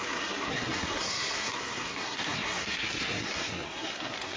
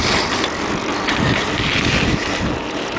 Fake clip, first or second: first